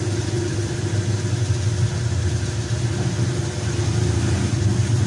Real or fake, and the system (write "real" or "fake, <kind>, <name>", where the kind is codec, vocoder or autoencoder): real